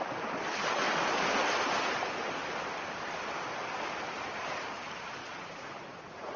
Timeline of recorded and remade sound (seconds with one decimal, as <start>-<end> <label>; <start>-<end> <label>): 0.0-5.2 recorded; 5.2-6.4 remade